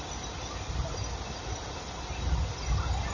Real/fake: real